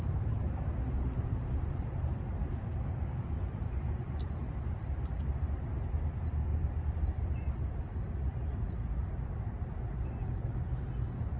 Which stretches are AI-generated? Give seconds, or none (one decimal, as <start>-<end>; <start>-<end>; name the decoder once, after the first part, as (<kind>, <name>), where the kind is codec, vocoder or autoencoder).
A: 0.0-11.4 (vocoder, BigVGAN v2)